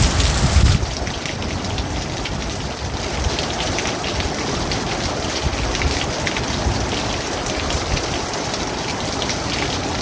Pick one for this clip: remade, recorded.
recorded